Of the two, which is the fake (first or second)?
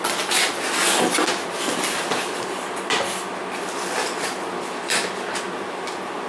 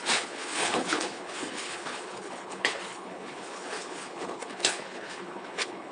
second